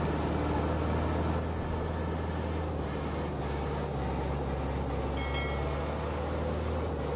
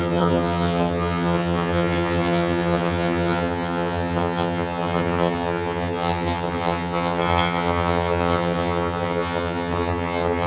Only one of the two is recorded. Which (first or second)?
first